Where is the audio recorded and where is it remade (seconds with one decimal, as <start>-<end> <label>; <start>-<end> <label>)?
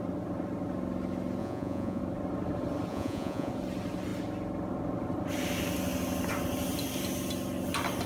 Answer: 0.0-1.4 recorded; 1.4-2.0 remade; 2.0-2.9 recorded; 2.9-3.5 remade; 3.5-8.1 recorded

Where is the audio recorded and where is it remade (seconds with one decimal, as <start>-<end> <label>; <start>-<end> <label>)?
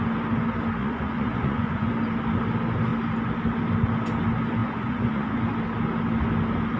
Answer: 0.0-0.8 recorded; 0.8-1.9 remade; 1.9-4.6 recorded; 4.6-5.4 remade; 5.4-6.8 recorded